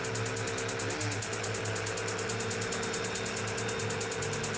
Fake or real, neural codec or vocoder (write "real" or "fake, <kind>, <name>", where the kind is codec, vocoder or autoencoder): real